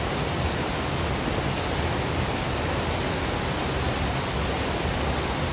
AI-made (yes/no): no